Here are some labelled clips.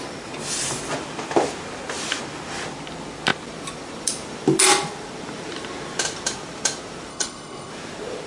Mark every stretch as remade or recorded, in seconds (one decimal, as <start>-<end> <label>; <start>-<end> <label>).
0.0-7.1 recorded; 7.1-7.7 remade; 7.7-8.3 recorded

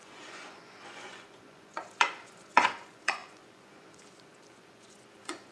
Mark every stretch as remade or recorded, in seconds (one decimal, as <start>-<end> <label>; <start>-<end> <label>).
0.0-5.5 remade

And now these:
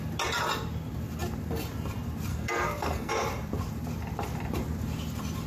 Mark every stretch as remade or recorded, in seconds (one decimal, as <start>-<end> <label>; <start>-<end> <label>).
0.0-2.3 recorded; 2.3-3.1 remade; 3.1-5.5 recorded